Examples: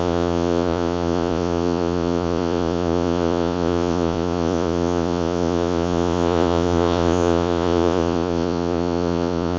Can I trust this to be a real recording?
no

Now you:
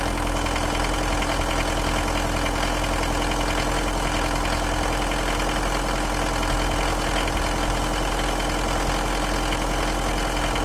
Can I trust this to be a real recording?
yes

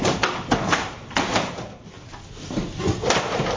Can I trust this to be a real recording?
yes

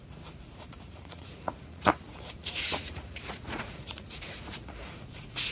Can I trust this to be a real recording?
no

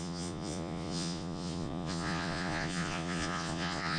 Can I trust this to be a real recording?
no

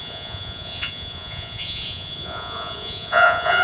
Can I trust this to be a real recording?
no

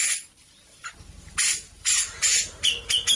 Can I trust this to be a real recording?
yes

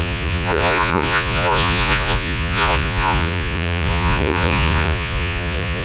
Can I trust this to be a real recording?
no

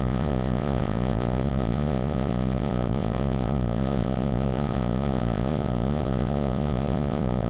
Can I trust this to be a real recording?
no